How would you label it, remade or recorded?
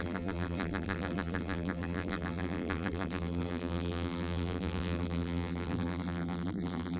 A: remade